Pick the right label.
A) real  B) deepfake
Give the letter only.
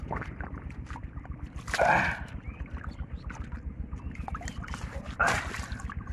A